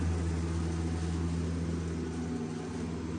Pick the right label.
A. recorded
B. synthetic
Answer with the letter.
A